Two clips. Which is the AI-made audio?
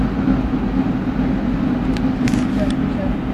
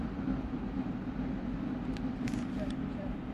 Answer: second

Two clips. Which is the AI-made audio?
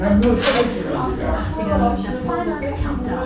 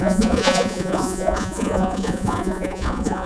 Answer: second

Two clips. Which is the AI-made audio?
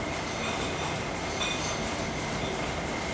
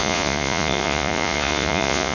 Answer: second